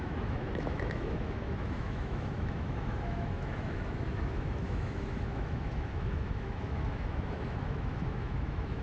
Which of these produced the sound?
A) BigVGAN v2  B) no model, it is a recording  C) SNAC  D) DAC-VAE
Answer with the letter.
D